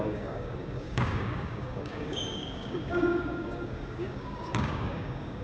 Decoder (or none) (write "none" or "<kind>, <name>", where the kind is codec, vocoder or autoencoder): codec, DAC